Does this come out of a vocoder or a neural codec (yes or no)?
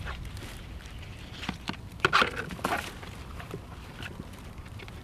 no